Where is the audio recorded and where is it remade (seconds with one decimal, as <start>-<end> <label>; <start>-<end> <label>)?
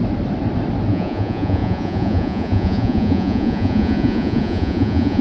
0.0-0.9 recorded; 0.9-5.2 remade